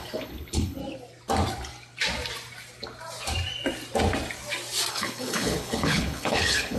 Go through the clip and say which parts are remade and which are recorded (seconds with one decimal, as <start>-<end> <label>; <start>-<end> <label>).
0.0-0.8 remade; 0.8-4.9 recorded; 4.9-6.8 remade